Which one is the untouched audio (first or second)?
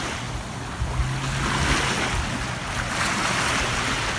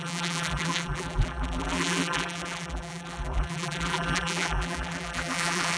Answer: first